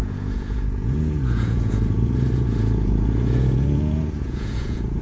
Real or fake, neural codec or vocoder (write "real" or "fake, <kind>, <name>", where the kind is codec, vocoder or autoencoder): fake, vocoder, Vocos